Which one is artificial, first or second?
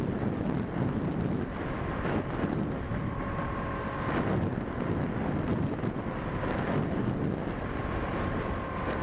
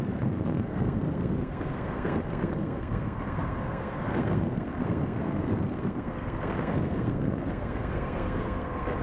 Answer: second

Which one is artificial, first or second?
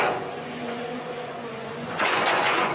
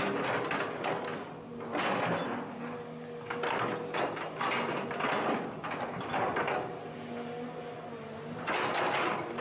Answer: first